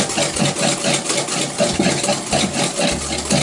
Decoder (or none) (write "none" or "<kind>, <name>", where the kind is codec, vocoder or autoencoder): none